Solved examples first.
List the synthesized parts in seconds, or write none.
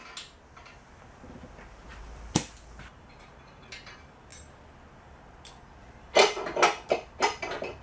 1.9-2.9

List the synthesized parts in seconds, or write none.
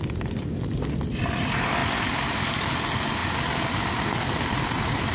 0.0-1.8; 2.3-3.2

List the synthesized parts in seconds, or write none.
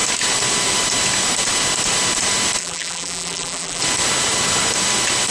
2.6-3.8